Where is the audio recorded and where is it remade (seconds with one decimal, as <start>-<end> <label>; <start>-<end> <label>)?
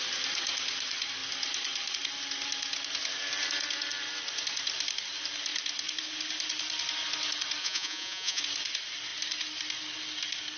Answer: 0.0-7.6 recorded; 7.6-8.4 remade; 8.4-10.6 recorded